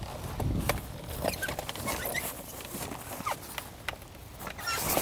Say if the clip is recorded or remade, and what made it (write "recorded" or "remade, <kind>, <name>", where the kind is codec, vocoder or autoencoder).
recorded